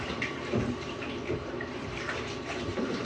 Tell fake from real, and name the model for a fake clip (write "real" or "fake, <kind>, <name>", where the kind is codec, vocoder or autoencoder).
fake, vocoder, BigVGAN v2